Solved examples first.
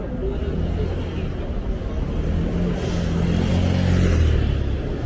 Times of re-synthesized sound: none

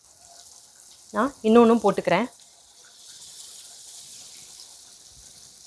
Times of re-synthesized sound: 1.9-4.3 (vocoder, Vocos)

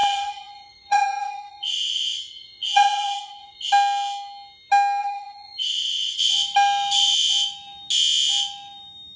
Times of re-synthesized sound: 0.0-3.7 (vocoder, Vocos); 5.0-6.3